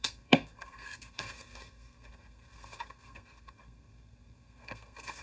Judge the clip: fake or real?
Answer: fake